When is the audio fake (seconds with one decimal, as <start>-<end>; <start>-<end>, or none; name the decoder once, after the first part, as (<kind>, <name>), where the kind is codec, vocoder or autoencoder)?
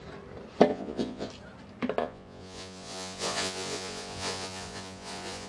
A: 0.7-1.3 (vocoder, Vocos); 2.0-5.5